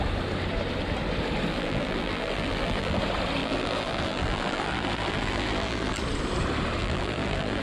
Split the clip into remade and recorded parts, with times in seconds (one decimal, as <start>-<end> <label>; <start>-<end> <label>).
0.0-1.5 recorded; 1.5-3.0 remade; 3.0-3.4 recorded; 3.4-6.0 remade; 6.0-6.8 recorded; 6.8-7.6 remade

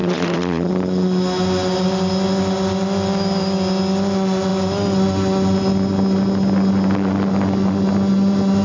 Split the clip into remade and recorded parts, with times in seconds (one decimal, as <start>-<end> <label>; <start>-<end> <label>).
0.0-0.7 remade; 0.7-8.6 recorded

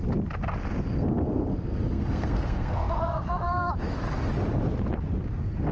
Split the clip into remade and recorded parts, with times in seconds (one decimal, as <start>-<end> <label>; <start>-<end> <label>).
0.0-1.0 recorded; 1.0-3.7 remade; 3.7-5.7 recorded

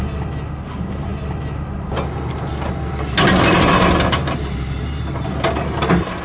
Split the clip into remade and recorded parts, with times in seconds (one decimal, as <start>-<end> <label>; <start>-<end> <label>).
0.0-6.2 recorded

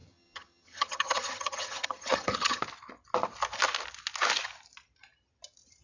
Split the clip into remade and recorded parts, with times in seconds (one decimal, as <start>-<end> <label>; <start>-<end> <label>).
0.0-2.6 remade; 2.6-5.8 recorded

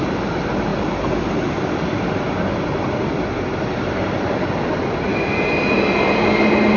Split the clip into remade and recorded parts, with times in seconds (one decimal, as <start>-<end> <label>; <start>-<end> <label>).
0.0-6.8 recorded

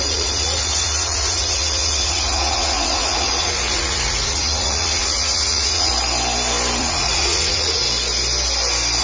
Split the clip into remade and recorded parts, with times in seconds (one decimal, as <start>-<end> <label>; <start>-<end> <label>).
0.0-5.9 remade; 5.9-6.8 recorded; 6.8-7.8 remade; 7.8-9.0 recorded

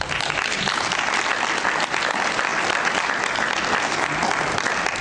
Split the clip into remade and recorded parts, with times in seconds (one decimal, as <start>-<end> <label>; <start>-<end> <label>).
0.0-5.0 recorded